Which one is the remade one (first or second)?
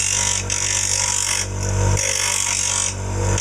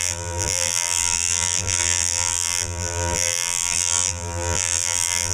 second